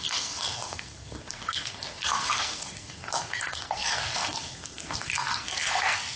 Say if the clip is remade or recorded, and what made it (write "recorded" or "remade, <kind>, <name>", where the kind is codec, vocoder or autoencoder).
remade, codec, SNAC